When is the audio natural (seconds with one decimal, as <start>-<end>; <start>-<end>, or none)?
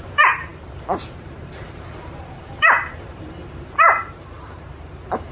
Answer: none